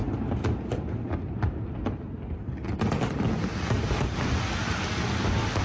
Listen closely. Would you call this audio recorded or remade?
recorded